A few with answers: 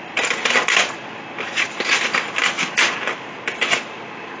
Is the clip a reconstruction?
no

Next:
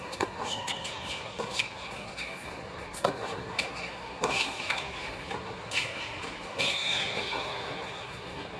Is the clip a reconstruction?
yes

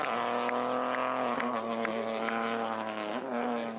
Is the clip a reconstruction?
no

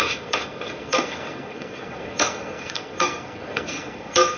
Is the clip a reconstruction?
yes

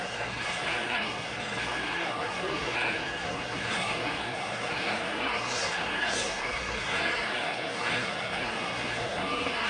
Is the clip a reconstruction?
yes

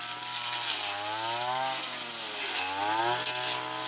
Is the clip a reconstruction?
no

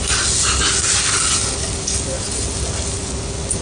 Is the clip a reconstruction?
no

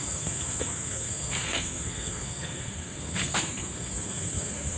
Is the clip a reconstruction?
yes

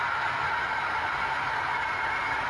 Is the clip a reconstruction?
no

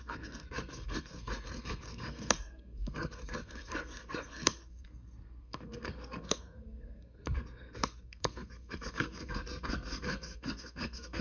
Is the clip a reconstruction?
yes